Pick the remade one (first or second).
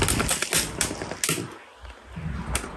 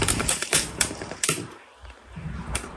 second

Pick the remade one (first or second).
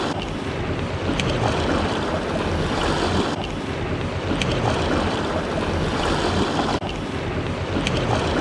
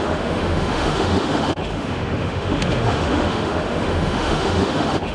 second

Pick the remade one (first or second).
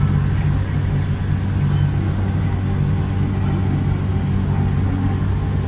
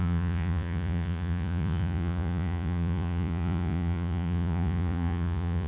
second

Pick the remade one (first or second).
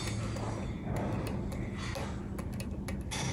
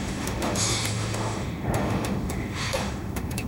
second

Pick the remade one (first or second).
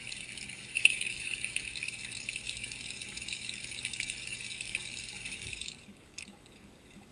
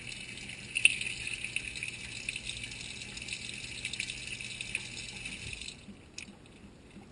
first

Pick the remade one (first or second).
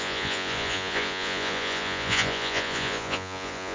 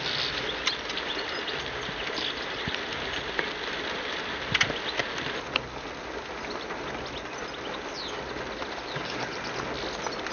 first